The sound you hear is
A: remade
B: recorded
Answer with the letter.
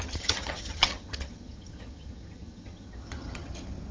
A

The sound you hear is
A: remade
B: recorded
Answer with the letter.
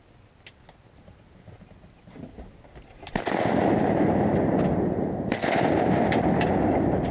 B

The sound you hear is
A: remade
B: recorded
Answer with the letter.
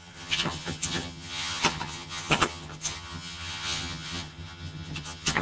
A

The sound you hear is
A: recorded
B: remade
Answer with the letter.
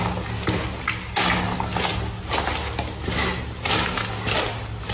A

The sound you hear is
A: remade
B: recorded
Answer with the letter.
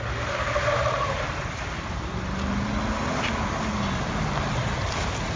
B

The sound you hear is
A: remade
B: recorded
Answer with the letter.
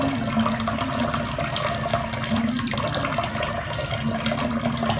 B